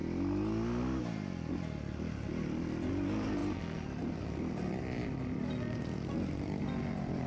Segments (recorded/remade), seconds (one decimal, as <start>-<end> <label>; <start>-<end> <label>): 0.0-2.9 recorded; 2.9-3.4 remade; 3.4-4.0 recorded; 4.0-5.0 remade; 5.0-6.3 recorded; 6.3-7.3 remade